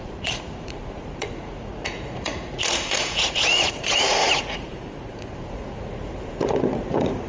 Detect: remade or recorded remade